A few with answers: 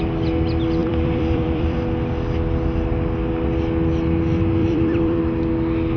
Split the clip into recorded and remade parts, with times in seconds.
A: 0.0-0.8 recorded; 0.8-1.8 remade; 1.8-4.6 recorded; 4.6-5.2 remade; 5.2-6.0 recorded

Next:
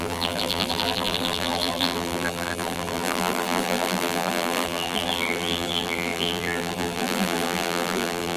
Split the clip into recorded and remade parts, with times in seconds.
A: 0.0-8.4 remade

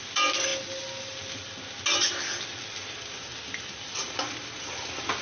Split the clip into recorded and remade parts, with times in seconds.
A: 0.0-0.5 remade; 0.5-2.6 recorded; 2.6-3.3 remade; 3.3-4.6 recorded; 4.6-5.2 remade

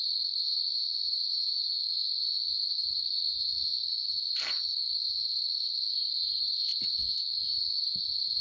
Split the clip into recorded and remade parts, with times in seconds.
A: 0.0-6.7 remade; 6.7-7.7 recorded; 7.7-8.4 remade

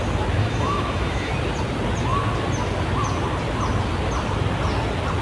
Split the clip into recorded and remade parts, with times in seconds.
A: 0.0-0.4 recorded; 0.4-1.3 remade; 1.3-5.2 recorded

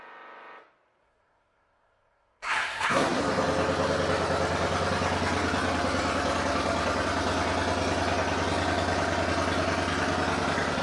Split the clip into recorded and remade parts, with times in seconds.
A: 0.0-1.0 recorded; 1.0-3.2 remade; 3.2-10.8 recorded